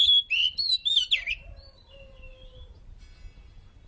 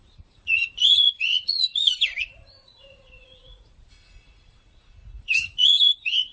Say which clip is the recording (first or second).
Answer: first